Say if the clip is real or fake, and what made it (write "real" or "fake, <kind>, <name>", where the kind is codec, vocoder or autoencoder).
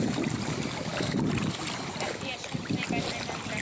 real